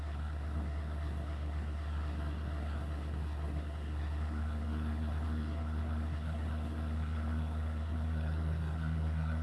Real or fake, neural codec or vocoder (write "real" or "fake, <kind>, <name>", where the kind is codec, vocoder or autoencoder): fake, codec, SNAC